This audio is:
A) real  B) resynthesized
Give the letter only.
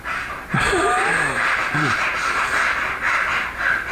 B